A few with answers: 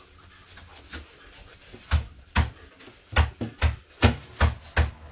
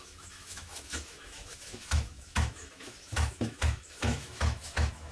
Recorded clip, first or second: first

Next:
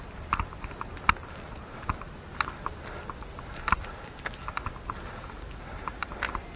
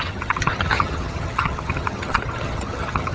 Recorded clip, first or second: first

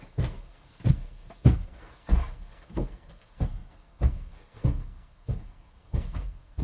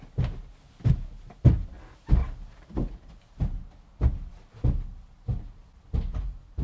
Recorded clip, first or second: second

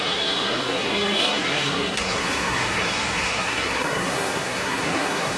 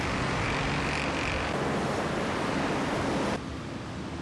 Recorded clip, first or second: second